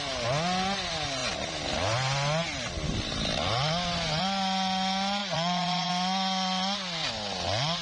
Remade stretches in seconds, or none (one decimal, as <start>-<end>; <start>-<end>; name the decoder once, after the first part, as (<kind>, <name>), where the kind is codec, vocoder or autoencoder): 5.2-5.9 (vocoder, Vocos)